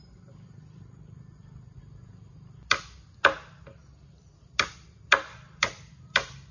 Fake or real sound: real